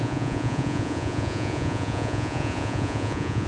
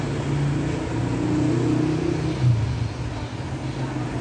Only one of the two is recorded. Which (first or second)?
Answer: second